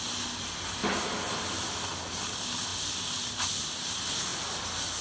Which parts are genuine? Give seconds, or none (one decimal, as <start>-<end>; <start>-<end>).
0.0-4.3